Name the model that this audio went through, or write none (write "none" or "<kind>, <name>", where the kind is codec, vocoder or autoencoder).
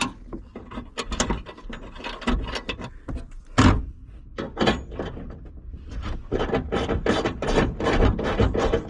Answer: none